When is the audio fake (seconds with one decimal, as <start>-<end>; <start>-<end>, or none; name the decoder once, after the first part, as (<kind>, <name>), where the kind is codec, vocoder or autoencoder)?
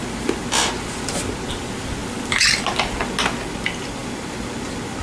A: none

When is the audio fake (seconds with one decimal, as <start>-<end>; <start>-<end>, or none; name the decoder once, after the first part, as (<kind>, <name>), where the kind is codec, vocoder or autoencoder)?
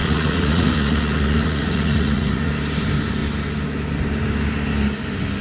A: 0.0-2.5 (vocoder, Vocos)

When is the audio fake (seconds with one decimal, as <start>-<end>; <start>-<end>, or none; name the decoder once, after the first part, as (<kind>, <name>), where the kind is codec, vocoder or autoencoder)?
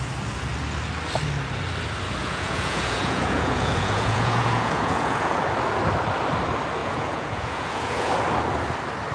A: 2.2-5.4 (vocoder, Vocos); 6.8-8.1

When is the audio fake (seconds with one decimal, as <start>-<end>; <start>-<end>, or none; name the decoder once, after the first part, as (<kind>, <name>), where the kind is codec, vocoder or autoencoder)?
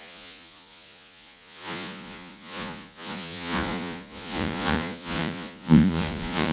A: 0.0-6.5 (vocoder, Vocos)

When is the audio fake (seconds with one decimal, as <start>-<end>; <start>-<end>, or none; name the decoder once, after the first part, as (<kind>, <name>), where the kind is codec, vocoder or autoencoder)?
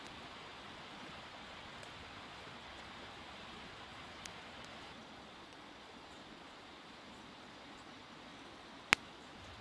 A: 0.0-8.3 (vocoder, Vocos); 9.0-9.6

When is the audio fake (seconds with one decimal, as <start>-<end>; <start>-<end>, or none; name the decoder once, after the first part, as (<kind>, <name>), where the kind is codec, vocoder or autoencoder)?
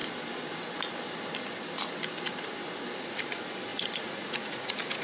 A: 3.0-5.0 (vocoder, Vocos)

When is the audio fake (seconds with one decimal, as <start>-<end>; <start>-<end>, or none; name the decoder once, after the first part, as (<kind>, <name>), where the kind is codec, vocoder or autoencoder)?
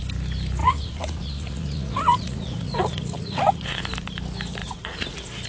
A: 0.6-3.8 (vocoder, Vocos); 4.6-5.1